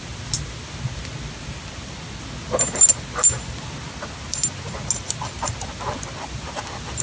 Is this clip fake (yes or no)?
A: no